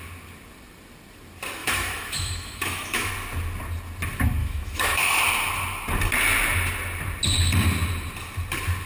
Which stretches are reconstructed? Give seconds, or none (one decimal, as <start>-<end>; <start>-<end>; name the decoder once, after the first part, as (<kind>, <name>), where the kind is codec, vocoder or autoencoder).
1.6-3.1 (autoencoder, DAC-VAE); 4.4-5.2